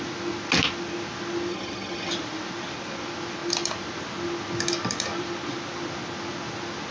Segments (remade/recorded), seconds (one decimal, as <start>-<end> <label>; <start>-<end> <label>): 0.0-1.5 recorded; 1.5-2.1 remade; 2.1-6.9 recorded